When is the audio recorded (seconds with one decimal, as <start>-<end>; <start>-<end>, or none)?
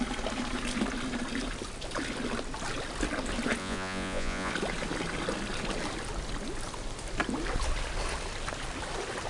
0.0-3.6; 4.5-9.3